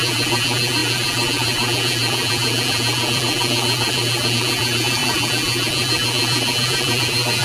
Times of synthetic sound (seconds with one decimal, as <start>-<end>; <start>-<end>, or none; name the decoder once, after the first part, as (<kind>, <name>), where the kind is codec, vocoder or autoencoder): 0.0-7.4 (vocoder, BigVGAN v2)